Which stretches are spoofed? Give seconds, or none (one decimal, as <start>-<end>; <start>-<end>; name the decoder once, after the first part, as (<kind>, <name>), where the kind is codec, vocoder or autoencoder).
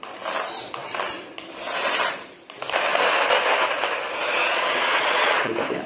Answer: 4.4-5.5 (vocoder, Vocos)